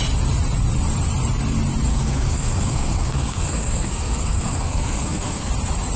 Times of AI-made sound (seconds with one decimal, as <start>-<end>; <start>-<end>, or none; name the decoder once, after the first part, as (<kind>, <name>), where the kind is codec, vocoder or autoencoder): 1.9-5.5 (codec, SNAC)